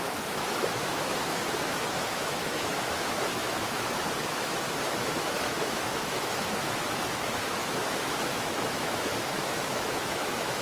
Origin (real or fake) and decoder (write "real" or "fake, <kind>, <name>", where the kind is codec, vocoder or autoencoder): fake, autoencoder, DAC-VAE